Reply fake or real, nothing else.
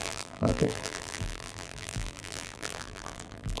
fake